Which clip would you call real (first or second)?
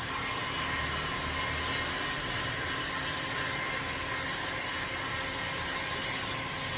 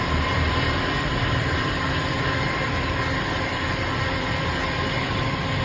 first